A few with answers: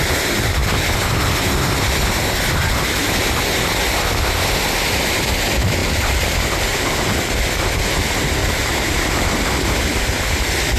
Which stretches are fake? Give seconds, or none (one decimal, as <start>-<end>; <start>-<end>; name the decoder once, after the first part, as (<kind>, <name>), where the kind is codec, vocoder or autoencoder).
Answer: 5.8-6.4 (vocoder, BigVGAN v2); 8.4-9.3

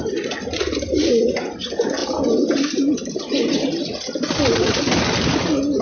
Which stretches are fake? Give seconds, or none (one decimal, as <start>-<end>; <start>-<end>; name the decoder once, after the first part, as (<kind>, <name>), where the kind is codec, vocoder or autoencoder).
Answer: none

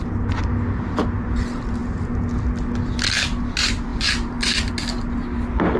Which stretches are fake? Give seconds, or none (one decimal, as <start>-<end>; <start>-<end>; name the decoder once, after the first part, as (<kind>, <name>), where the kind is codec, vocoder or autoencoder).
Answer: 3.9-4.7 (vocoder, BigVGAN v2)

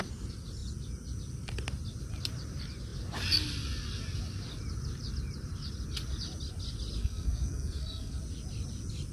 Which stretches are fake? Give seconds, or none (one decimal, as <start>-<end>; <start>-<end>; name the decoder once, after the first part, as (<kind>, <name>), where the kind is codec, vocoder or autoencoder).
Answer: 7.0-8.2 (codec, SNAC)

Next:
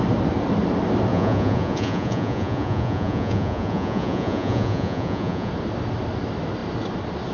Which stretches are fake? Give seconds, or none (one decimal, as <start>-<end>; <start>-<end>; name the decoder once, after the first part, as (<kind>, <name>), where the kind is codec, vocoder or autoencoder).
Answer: 1.1-5.5 (vocoder, Vocos)